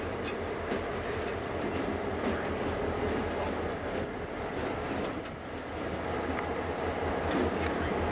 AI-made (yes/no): no